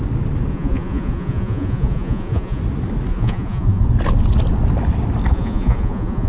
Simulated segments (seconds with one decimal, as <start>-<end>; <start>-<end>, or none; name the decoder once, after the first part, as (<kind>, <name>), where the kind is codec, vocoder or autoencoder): 0.5-2.6 (vocoder, Vocos); 3.1-3.8; 5.3-6.3